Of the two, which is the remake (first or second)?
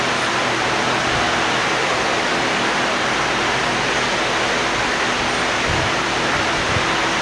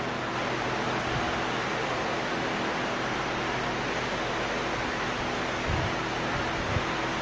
first